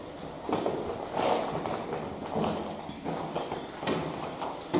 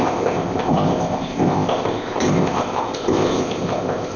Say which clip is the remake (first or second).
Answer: second